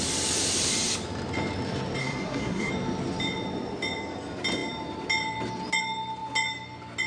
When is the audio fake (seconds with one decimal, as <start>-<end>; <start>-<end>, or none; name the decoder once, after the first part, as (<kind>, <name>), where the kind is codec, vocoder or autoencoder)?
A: 2.0-2.7 (codec, SNAC)